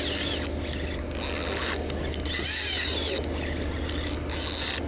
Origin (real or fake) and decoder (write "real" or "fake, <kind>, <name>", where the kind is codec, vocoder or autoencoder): real